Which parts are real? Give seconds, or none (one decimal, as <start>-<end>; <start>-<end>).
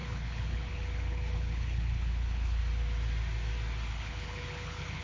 2.6-3.9